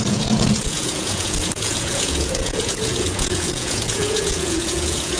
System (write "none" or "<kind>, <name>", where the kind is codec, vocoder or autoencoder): vocoder, Vocos